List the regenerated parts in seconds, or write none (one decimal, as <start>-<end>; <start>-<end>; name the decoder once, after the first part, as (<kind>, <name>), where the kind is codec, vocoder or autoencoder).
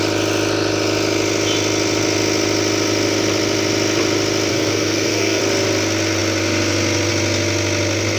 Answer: 4.5-5.4 (codec, SNAC)